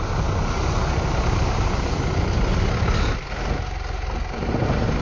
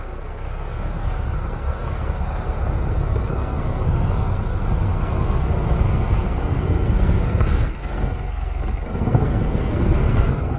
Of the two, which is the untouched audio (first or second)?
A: first